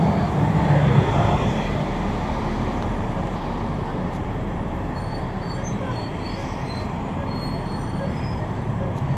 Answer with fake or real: fake